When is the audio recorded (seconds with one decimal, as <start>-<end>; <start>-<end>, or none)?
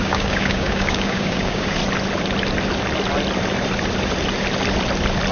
1.8-5.3